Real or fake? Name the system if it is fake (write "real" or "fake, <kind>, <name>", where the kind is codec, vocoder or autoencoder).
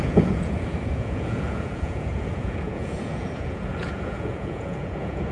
fake, vocoder, Vocos